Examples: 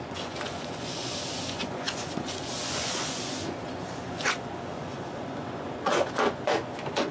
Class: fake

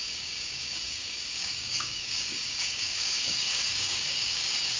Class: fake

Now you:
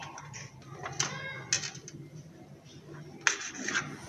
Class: real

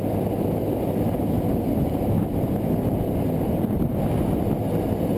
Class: real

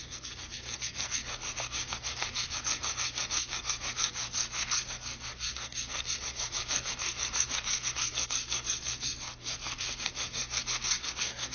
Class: fake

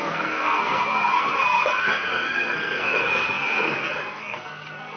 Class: fake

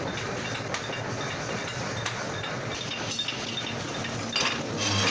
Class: real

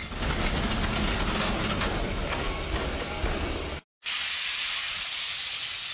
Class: real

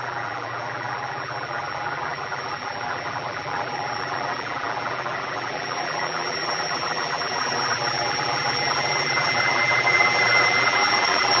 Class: fake